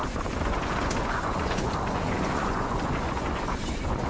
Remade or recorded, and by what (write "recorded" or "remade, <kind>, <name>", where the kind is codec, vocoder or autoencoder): remade, vocoder, Vocos